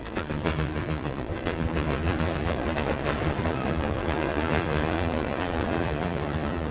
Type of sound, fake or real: fake